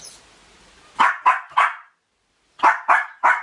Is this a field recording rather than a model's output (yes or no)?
yes